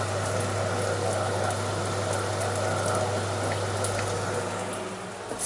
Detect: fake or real real